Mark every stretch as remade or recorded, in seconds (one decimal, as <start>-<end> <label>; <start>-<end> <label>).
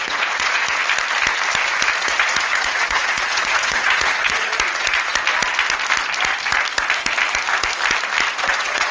0.0-0.8 remade; 0.8-2.0 recorded; 2.0-4.5 remade; 4.5-8.3 recorded; 8.3-8.9 remade